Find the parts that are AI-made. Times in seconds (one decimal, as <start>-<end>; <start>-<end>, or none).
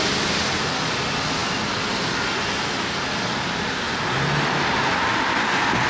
none